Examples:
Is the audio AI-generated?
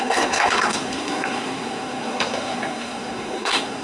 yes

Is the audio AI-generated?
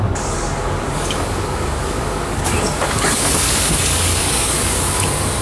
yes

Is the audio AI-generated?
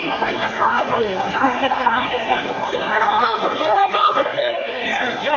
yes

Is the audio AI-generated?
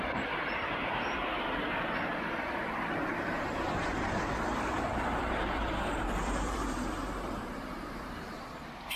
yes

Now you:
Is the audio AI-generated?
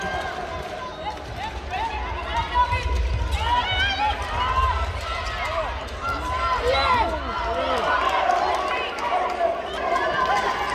no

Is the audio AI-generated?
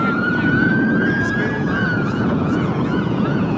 yes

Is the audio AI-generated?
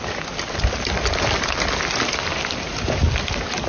no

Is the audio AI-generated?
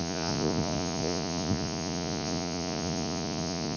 yes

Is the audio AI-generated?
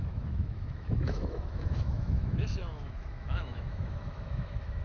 yes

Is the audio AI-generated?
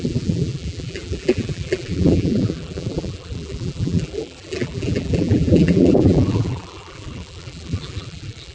yes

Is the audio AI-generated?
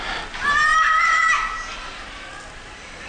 no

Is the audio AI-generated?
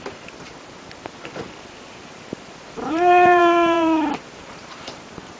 yes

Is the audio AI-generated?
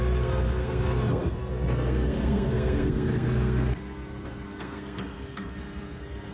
yes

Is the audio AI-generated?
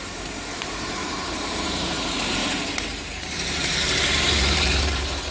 yes